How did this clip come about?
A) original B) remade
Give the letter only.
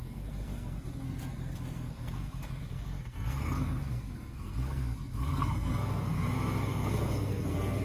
B